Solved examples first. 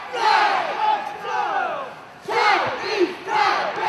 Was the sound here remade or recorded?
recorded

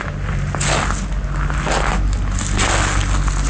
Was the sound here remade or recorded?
recorded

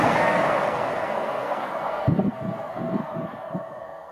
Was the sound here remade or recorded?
remade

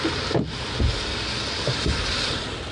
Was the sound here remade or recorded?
recorded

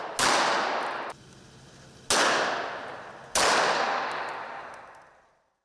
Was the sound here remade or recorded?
recorded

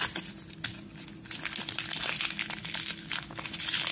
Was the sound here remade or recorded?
recorded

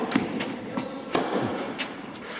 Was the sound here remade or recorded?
recorded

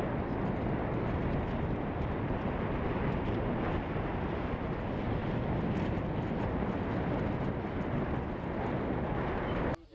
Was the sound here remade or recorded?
recorded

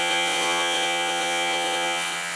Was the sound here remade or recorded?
remade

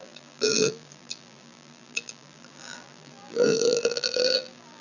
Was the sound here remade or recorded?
remade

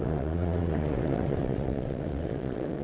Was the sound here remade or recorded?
remade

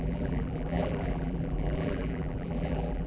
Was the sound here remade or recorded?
remade